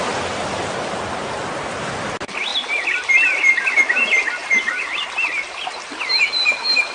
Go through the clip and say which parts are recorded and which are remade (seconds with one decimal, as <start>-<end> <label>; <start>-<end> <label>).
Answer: 0.0-2.5 recorded; 2.5-3.8 remade; 3.8-6.9 recorded